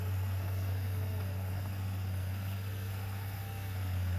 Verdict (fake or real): fake